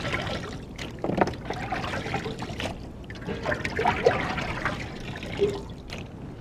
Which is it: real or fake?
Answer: real